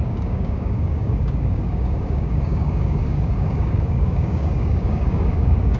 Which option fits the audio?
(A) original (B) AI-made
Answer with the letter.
B